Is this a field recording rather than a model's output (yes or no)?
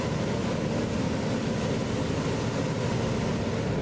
yes